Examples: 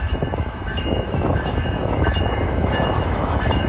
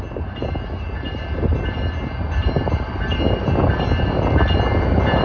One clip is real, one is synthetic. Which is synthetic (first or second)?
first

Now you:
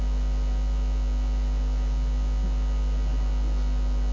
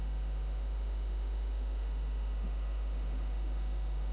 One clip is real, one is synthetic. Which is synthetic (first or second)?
second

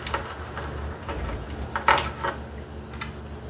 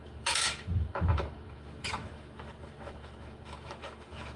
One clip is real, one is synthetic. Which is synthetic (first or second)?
second